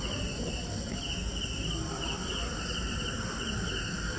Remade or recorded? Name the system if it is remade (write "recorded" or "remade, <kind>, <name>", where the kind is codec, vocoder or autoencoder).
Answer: recorded